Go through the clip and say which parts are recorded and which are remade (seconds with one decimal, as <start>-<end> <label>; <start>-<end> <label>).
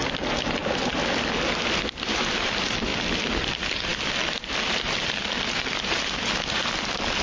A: 0.0-7.2 recorded